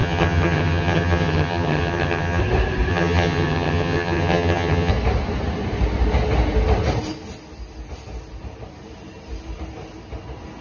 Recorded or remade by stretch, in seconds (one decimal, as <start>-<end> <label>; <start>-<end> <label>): 0.0-2.4 remade; 2.4-2.9 recorded; 2.9-4.9 remade; 4.9-10.6 recorded